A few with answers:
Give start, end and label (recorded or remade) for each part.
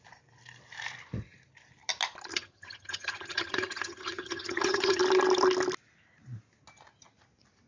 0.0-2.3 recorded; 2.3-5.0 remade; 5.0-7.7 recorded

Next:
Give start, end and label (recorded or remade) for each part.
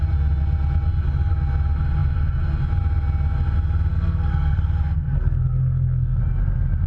0.0-3.9 recorded; 3.9-6.2 remade; 6.2-6.9 recorded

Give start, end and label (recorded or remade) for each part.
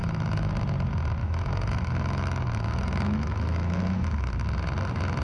0.0-0.5 remade; 0.5-1.2 recorded; 1.2-4.3 remade; 4.3-5.2 recorded